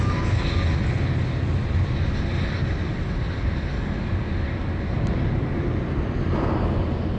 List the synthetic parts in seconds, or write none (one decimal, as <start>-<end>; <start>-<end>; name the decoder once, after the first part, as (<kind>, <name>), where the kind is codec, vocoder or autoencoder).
none